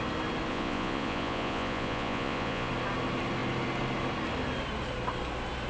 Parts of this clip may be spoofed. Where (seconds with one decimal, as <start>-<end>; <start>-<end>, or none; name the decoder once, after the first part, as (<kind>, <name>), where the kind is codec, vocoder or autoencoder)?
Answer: 0.5-2.7 (vocoder, Vocos)